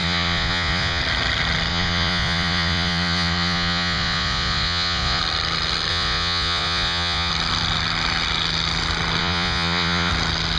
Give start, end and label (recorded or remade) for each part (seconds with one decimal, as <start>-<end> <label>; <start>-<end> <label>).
0.0-1.0 remade; 1.0-1.7 recorded; 1.7-5.2 remade; 5.2-5.9 recorded; 5.9-7.3 remade; 7.3-9.2 recorded; 9.2-10.1 remade; 10.1-10.6 recorded